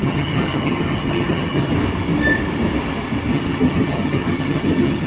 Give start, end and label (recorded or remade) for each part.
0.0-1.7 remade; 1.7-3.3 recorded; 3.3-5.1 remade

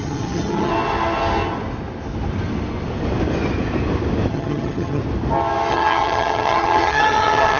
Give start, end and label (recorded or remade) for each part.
0.0-0.7 remade; 0.7-4.3 recorded; 4.3-5.0 remade; 5.0-5.7 recorded; 5.7-7.6 remade

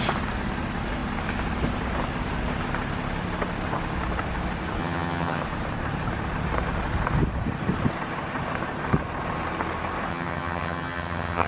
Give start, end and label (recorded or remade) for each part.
0.0-4.8 recorded; 4.8-5.4 remade; 5.4-10.1 recorded; 10.1-11.5 remade

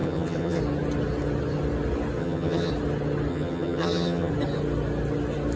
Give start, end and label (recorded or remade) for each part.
0.0-0.6 remade; 0.6-2.2 recorded; 2.2-2.7 remade; 2.7-3.3 recorded; 3.3-4.3 remade; 4.3-5.6 recorded